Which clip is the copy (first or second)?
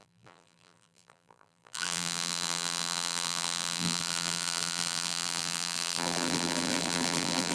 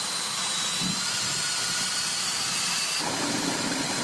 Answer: first